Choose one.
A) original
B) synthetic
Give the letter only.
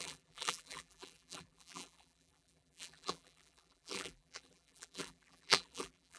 B